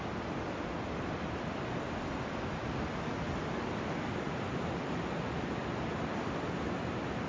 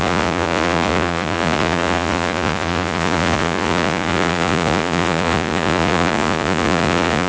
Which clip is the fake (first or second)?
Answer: second